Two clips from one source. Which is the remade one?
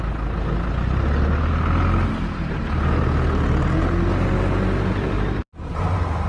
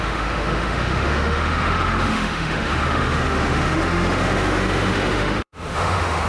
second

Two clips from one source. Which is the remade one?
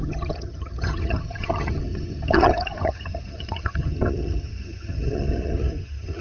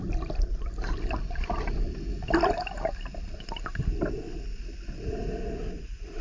first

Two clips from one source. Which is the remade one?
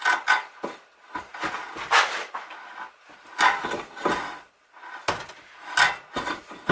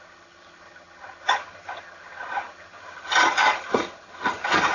second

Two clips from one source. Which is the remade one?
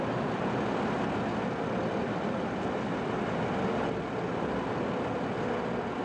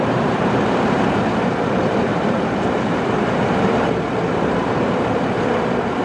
second